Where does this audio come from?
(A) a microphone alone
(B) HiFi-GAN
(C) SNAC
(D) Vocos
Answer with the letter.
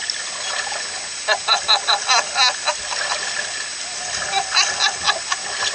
A